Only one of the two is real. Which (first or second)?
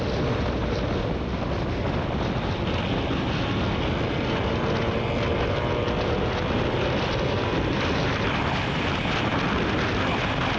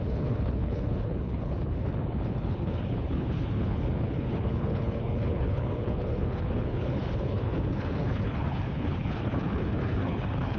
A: first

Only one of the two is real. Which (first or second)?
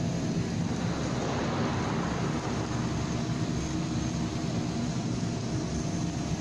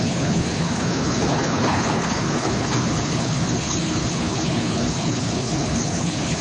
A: first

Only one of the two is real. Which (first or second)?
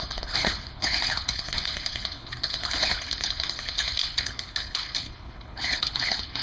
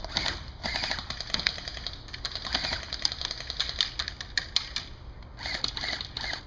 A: second